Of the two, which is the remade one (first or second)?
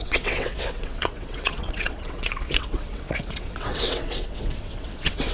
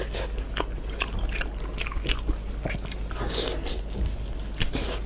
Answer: first